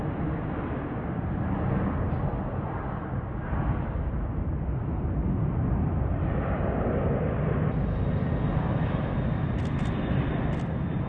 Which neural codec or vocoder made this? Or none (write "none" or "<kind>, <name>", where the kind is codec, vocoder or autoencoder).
none